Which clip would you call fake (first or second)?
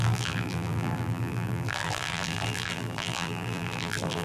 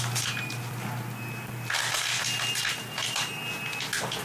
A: first